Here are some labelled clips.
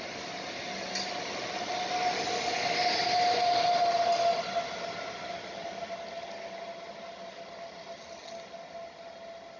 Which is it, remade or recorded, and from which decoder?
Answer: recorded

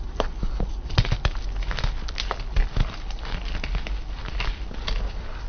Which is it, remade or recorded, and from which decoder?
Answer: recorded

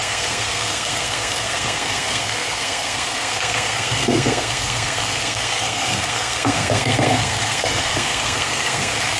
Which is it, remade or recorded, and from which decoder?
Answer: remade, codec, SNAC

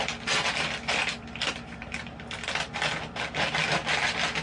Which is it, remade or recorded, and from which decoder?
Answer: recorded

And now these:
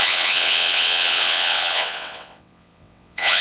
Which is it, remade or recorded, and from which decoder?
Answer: remade, vocoder, WaveNeXt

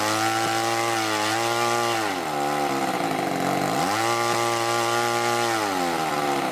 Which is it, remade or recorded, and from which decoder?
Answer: recorded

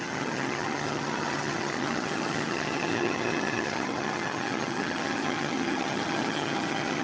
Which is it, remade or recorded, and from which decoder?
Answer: remade, vocoder, HiFi-GAN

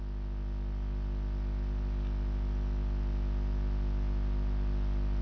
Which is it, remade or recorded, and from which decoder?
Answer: recorded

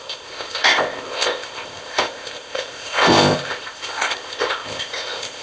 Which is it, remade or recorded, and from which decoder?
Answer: remade, codec, ZipCodec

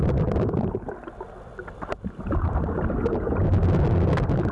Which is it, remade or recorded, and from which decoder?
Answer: recorded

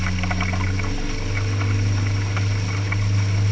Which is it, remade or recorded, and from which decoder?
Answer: recorded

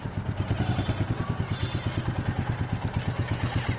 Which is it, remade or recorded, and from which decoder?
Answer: recorded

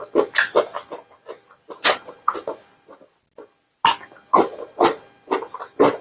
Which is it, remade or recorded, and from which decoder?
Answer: recorded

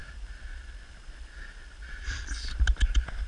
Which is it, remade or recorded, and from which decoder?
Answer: recorded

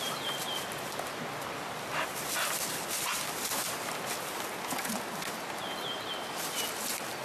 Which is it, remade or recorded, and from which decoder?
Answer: recorded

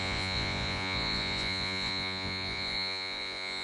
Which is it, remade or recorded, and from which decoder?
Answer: remade, vocoder, Vocos